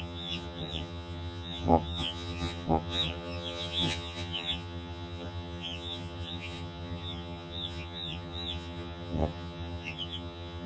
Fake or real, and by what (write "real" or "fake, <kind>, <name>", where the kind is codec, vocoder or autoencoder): fake, vocoder, HiFi-GAN